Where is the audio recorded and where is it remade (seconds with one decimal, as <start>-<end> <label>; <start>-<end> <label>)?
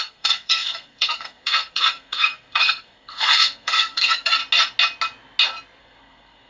0.0-4.4 remade; 4.4-5.8 recorded; 5.8-6.5 remade